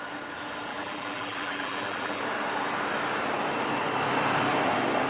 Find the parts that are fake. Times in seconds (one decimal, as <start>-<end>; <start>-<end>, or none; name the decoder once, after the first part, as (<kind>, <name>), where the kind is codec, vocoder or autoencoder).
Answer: 0.7-2.2 (vocoder, BigVGAN v2)